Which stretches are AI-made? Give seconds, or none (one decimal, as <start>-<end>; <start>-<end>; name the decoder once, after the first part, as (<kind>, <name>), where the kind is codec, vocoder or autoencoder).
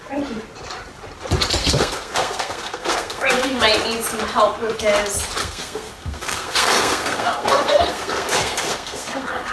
1.6-3.6 (codec, SNAC); 5.4-9.5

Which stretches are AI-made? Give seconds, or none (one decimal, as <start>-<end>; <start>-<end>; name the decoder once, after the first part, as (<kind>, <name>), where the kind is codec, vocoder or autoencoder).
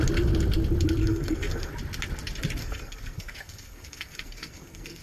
1.0-1.7 (codec, SNAC); 2.6-5.0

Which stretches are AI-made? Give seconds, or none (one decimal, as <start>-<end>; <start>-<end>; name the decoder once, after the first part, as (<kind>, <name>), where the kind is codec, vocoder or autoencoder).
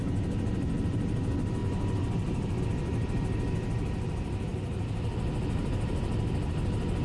none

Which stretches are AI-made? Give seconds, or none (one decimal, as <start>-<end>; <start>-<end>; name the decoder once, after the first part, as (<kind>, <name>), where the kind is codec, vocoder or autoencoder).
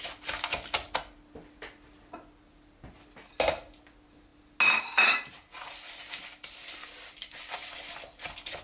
none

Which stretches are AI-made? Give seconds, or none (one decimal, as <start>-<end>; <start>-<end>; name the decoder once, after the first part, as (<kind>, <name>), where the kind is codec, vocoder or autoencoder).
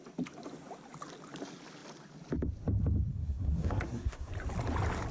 3.1-4.3 (codec, SNAC)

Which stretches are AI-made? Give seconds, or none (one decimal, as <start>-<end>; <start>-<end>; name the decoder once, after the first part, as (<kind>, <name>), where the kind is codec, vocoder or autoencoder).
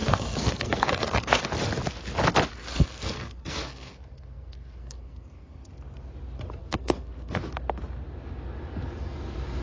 0.0-1.4 (codec, SNAC); 2.6-5.7; 6.6-7.5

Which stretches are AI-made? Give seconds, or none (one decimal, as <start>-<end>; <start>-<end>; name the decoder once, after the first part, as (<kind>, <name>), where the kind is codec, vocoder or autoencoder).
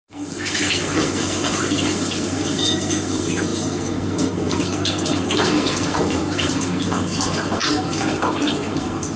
0.0-9.2 (codec, SNAC)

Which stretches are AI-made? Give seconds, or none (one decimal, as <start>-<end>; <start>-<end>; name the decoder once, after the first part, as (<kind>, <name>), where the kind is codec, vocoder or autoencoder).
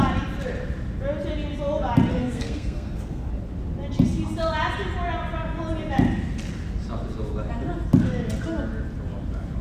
2.1-3.3 (codec, SNAC)